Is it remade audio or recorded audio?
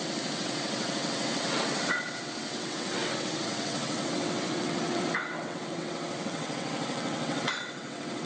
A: remade